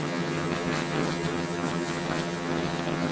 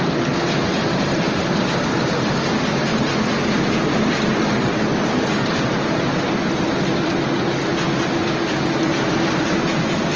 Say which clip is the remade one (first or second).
first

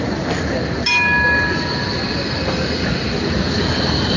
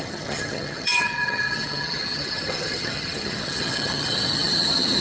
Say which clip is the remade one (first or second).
second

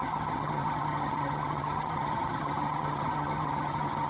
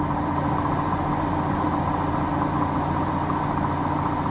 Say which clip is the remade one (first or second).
first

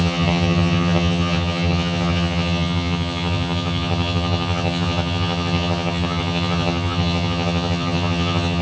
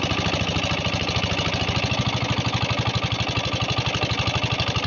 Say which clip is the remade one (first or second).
first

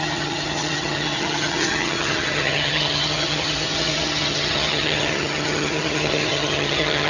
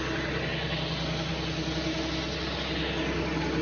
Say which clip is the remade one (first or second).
first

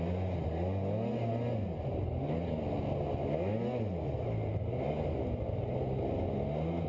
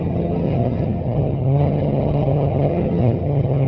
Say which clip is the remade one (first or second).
second